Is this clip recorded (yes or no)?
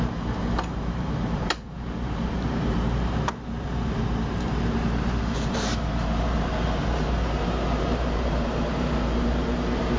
no